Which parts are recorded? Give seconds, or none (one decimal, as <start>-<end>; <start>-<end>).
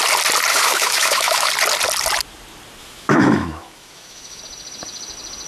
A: 0.0-0.5; 1.5-2.8; 4.4-5.5